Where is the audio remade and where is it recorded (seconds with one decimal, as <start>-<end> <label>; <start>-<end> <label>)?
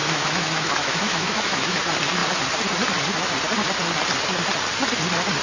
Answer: 0.0-1.8 remade; 1.8-5.4 recorded